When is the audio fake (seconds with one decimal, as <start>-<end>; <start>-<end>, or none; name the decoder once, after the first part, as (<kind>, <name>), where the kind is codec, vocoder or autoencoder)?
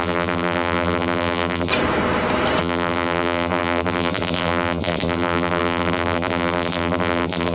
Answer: 0.0-1.7 (vocoder, BigVGAN v2); 2.6-7.5